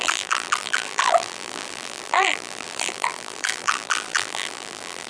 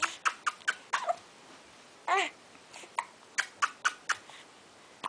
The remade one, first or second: first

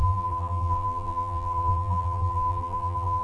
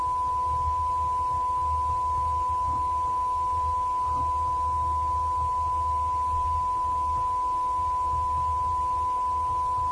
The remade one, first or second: first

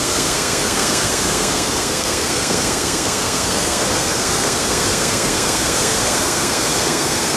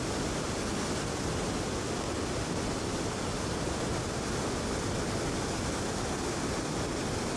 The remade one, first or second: first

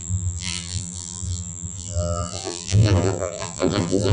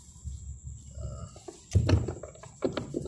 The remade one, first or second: first